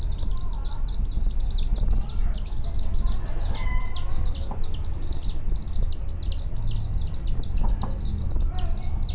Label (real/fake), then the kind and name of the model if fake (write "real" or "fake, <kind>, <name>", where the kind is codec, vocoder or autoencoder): real